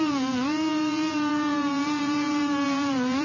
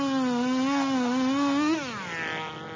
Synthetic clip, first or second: first